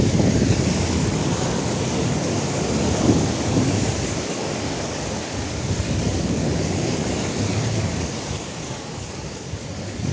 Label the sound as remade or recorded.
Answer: remade